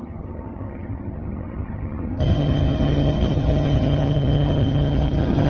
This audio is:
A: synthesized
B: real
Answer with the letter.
A